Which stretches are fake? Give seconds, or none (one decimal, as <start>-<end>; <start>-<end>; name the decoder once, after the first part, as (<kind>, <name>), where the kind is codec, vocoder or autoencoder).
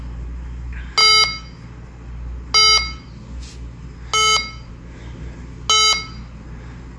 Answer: none